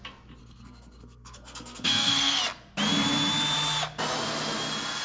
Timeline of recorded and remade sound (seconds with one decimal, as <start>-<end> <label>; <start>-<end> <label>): 0.0-0.4 recorded; 0.4-2.4 remade; 2.4-5.0 recorded